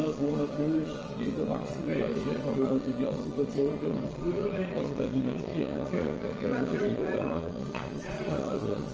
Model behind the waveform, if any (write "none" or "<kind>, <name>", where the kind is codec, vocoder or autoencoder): vocoder, Vocos